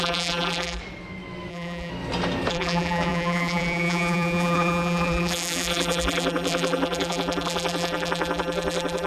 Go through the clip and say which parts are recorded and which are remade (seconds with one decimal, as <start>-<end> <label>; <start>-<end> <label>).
0.0-0.8 remade; 0.8-1.5 recorded; 1.5-1.9 remade; 1.9-2.5 recorded; 2.5-9.1 remade